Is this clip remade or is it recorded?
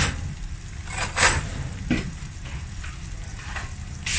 recorded